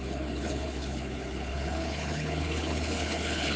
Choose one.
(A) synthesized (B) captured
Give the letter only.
A